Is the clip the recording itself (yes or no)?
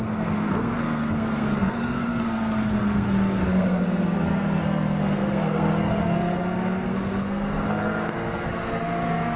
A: no